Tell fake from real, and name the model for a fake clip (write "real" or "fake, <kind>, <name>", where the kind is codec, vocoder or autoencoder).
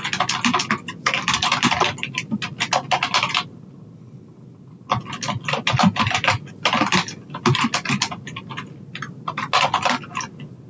real